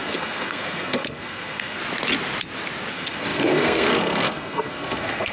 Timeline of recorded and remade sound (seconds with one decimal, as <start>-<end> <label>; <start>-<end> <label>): 0.0-1.8 remade; 1.8-2.9 recorded; 2.9-5.3 remade